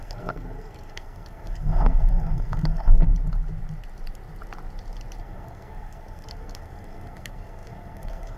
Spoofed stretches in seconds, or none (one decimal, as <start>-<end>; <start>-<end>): 0.0-3.1; 5.2-8.4